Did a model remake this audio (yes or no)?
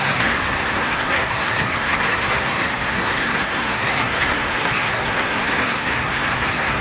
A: yes